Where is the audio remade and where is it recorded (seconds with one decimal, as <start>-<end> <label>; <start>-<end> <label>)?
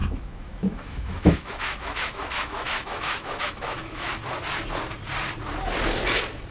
0.0-4.1 remade; 4.1-6.5 recorded